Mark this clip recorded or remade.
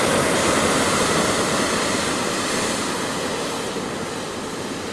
remade